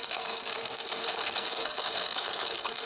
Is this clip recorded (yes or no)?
no